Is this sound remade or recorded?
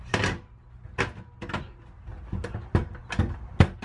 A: recorded